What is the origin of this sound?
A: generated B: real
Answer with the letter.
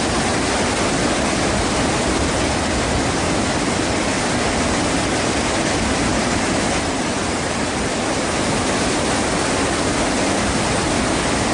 B